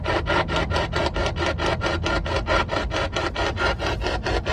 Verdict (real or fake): real